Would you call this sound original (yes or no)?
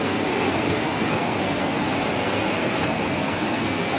no